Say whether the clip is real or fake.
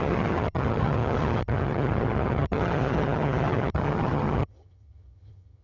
fake